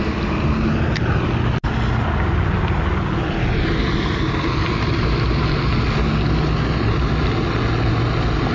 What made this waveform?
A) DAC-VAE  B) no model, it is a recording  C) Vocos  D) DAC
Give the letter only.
B